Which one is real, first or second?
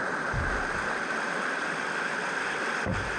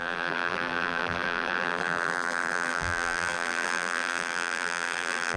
first